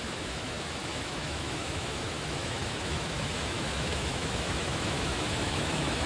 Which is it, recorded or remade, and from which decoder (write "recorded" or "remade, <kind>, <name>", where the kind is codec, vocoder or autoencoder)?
remade, autoencoder, DAC-VAE